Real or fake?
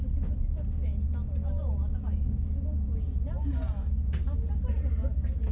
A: real